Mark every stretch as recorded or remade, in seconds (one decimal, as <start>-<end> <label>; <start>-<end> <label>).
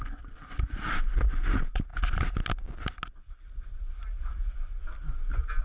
0.0-5.6 recorded